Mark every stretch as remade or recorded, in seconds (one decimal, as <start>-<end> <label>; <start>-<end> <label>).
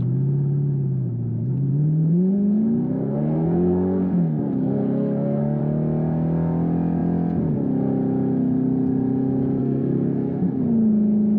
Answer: 0.0-1.7 recorded; 1.7-5.6 remade; 5.6-9.6 recorded; 9.6-10.6 remade; 10.6-11.4 recorded